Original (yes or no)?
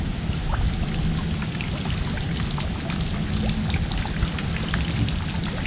yes